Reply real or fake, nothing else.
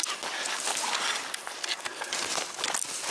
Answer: real